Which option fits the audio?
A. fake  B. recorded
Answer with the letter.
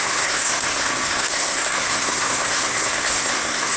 A